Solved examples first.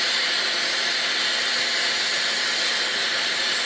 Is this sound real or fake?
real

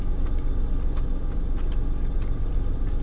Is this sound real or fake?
real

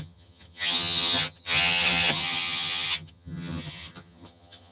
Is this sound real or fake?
fake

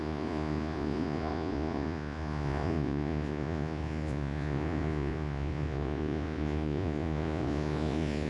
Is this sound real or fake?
fake